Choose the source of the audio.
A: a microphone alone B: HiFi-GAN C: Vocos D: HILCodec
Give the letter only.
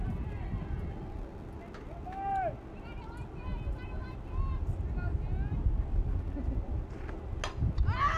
A